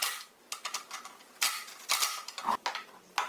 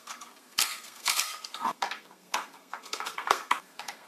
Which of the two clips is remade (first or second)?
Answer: second